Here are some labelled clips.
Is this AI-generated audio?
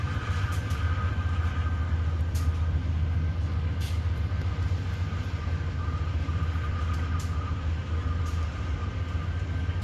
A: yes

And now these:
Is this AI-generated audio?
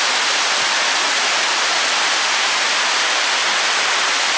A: yes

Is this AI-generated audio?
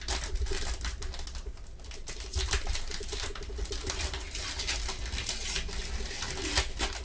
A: no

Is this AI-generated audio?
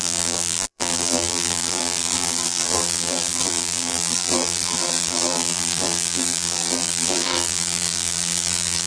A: yes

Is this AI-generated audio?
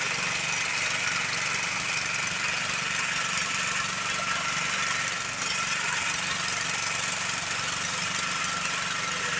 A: no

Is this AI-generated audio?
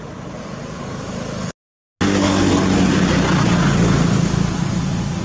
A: no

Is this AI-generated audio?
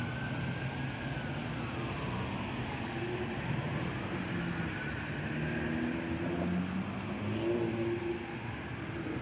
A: no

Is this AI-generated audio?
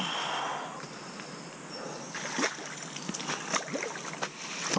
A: no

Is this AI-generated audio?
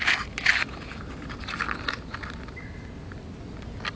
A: no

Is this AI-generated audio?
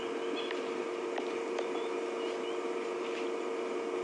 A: no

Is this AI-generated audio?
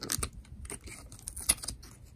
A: no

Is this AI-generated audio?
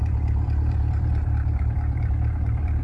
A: yes